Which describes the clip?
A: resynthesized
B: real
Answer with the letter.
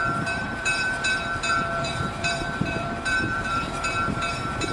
A